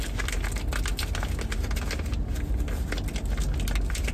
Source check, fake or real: real